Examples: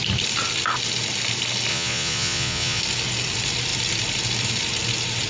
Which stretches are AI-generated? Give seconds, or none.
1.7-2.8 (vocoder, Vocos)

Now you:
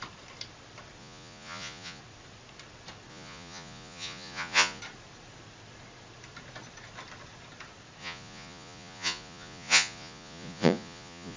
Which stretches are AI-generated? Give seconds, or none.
1.0-2.0 (vocoder, Vocos); 3.1-4.8; 8.0-11.4